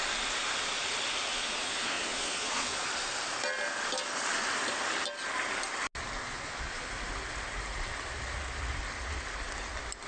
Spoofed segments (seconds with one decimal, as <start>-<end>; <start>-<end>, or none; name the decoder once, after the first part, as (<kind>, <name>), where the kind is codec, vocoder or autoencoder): 1.3-2.9 (vocoder, Vocos); 6.2-6.9